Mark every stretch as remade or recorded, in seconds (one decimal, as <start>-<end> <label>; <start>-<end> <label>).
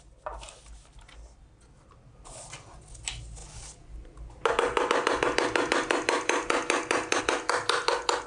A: 0.0-8.3 recorded